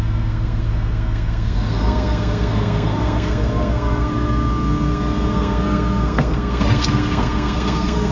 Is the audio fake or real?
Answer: fake